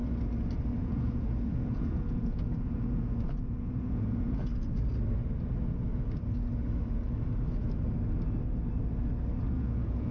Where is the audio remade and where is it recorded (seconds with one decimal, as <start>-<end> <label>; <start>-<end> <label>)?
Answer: 0.0-0.8 recorded; 0.8-4.5 remade; 4.5-9.5 recorded; 9.5-10.1 remade